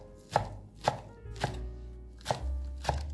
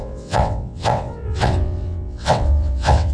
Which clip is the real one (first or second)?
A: first